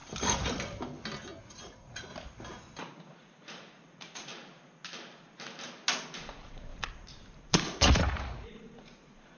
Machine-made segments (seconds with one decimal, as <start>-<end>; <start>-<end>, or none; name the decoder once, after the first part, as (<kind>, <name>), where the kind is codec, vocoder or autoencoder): 1.4-2.1 (vocoder, Vocos); 2.8-4.3; 6.2-6.7; 7.4-9.4